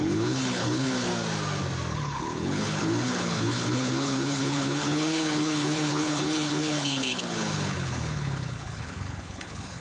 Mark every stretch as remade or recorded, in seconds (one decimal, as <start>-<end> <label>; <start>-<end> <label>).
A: 0.0-1.1 remade; 1.1-1.9 recorded; 1.9-9.8 remade